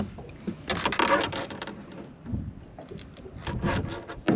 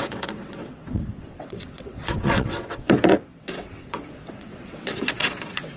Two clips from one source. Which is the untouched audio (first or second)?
first